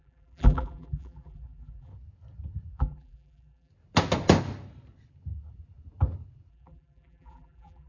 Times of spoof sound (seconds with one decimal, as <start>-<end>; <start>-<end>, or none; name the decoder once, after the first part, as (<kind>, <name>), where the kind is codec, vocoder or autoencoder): 0.0-1.9 (vocoder, BigVGAN v2); 2.7-3.7; 6.5-7.9